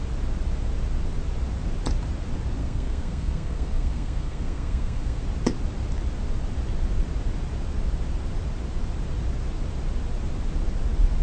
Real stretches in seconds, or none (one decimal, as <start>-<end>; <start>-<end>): 0.0-2.6; 5.2-11.2